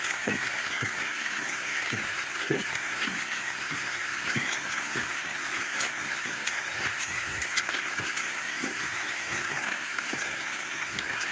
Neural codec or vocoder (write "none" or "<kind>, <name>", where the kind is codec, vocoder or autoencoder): codec, SNAC